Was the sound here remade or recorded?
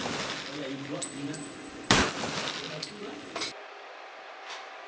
recorded